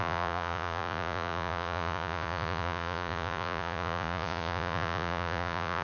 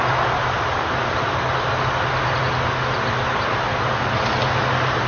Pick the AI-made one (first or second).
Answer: first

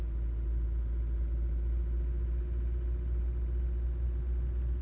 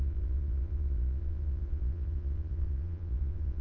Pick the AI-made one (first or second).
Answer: second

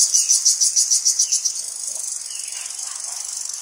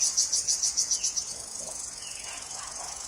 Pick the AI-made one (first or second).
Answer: second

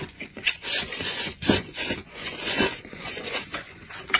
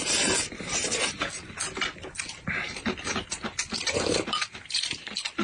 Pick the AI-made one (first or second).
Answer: first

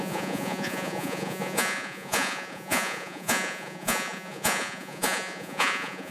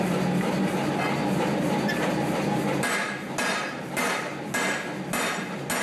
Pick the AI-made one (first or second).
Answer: first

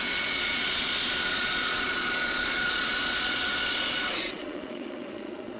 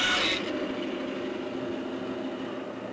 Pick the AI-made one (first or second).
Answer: first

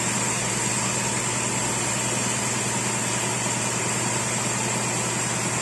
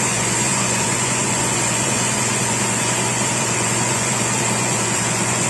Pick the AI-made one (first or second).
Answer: second